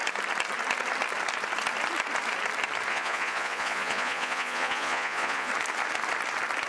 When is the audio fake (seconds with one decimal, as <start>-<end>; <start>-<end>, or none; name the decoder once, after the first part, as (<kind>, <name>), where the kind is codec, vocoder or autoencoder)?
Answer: 2.9-5.5 (vocoder, Vocos)